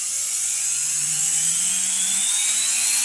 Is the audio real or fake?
fake